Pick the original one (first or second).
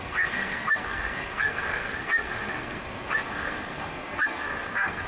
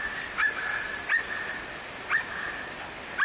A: second